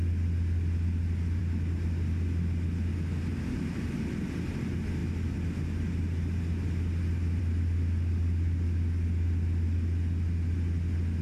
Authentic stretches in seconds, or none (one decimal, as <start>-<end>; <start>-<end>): 0.0-11.2

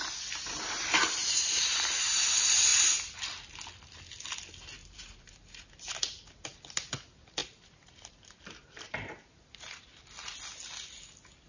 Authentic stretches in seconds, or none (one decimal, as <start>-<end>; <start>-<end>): 0.0-1.2; 2.3-4.8; 5.7-7.4; 10.0-11.5

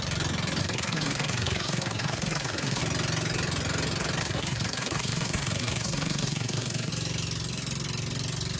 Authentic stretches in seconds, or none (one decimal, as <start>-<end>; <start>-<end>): 0.0-0.6; 2.8-4.2; 6.9-8.6

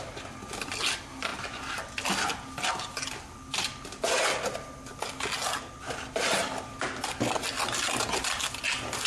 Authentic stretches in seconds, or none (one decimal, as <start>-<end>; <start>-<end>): 0.0-9.1